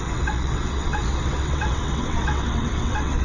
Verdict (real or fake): fake